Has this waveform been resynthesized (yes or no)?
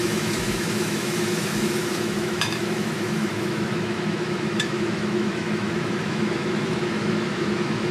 yes